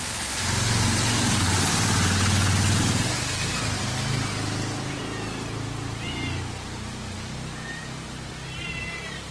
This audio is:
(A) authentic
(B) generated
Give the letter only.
A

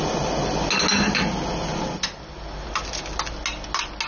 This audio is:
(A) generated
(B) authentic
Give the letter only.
B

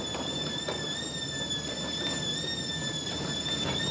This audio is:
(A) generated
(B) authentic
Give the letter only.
B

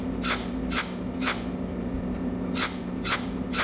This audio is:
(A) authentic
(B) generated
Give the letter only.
A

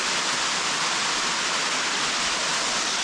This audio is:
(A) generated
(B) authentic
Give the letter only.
B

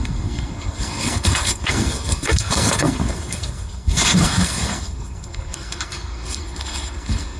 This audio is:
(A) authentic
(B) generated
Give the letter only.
B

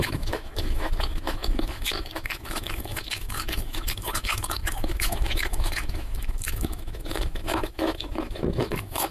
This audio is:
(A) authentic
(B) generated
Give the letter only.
B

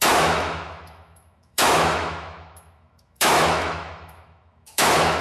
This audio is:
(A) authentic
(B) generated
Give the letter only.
B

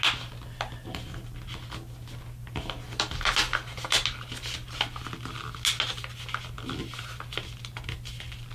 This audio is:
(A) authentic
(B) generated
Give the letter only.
A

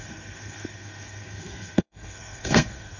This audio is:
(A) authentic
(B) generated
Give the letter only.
B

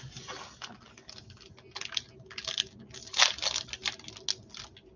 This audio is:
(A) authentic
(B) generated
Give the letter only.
A